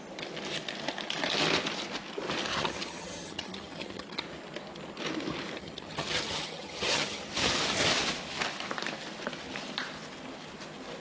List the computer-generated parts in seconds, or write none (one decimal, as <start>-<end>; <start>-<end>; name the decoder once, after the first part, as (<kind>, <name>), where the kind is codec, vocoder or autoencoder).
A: 2.5-4.2 (vocoder, HiFi-GAN); 5.6-7.2